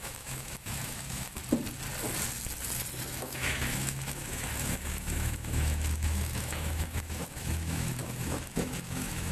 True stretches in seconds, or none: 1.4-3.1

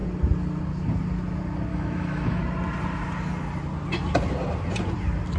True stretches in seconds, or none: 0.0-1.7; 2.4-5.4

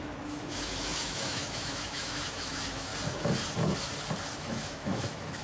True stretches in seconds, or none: 2.9-4.4

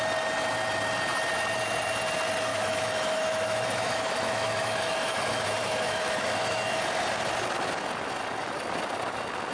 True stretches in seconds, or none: 0.0-2.5; 6.8-9.5